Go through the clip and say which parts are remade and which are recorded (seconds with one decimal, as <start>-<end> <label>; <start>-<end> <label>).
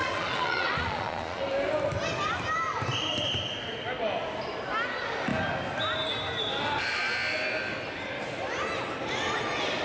0.0-1.4 remade; 1.4-9.8 recorded